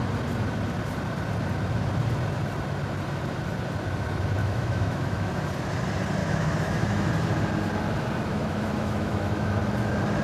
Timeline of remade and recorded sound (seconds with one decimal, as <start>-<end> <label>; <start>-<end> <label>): 0.0-4.4 recorded; 4.4-5.3 remade; 5.3-6.2 recorded; 6.2-7.1 remade; 7.1-8.3 recorded; 8.3-9.6 remade; 9.6-10.2 recorded